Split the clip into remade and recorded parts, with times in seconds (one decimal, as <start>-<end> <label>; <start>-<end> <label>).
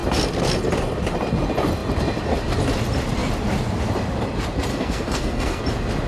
0.0-4.7 recorded; 4.7-5.6 remade; 5.6-6.1 recorded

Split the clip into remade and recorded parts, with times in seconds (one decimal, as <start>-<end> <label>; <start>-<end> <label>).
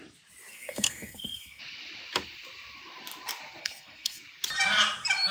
0.0-0.5 recorded; 0.5-1.6 remade; 1.6-3.6 recorded; 3.6-4.2 remade; 4.2-5.3 recorded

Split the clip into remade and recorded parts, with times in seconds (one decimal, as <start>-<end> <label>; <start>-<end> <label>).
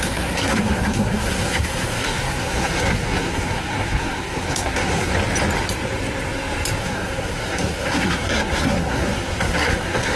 0.0-5.1 remade; 5.1-6.8 recorded; 6.8-10.2 remade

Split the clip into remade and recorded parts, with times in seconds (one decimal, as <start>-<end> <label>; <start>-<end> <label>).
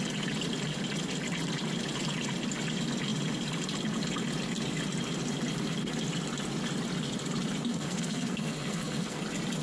0.0-7.7 recorded; 7.7-9.2 remade; 9.2-9.6 recorded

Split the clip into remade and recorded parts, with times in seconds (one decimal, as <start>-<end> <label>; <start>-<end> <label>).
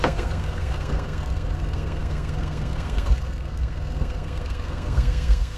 0.0-5.6 remade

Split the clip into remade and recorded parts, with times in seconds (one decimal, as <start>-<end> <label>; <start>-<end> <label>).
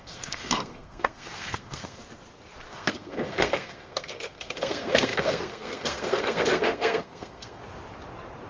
0.0-2.0 remade; 2.0-2.7 recorded; 2.7-7.6 remade; 7.6-8.5 recorded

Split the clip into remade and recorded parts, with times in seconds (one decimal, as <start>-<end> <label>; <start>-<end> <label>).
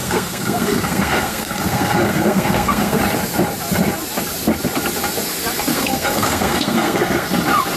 0.0-3.0 remade; 3.0-5.7 recorded; 5.7-7.3 remade; 7.3-7.8 recorded